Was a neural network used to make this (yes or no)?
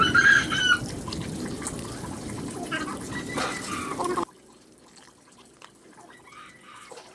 no